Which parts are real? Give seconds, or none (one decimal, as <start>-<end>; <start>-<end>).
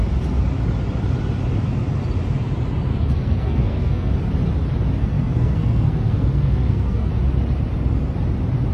0.0-2.9; 4.1-5.0; 7.1-8.7